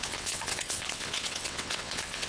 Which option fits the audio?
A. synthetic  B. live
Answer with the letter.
A